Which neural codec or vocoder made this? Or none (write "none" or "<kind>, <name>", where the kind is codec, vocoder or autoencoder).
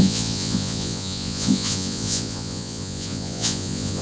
vocoder, Vocos